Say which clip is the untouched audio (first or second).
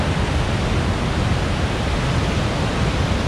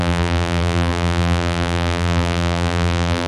first